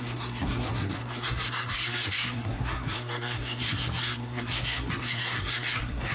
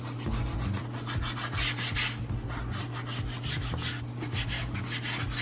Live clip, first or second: second